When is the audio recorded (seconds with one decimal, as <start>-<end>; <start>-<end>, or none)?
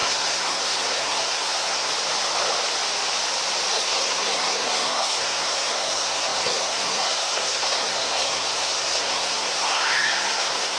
1.9-3.7